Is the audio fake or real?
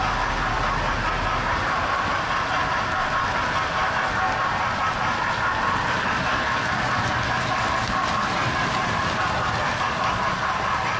real